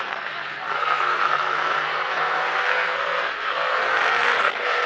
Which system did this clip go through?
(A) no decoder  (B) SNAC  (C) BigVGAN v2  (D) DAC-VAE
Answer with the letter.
B